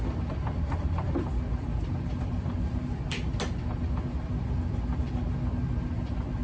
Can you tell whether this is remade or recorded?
recorded